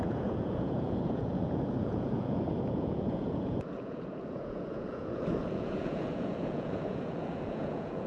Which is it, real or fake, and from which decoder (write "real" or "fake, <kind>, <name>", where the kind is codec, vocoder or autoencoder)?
fake, vocoder, Vocos